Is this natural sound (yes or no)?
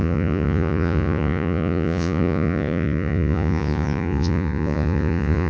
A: no